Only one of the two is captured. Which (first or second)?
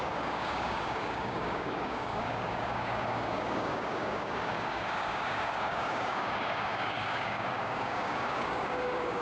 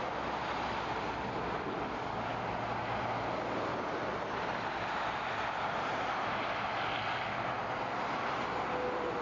second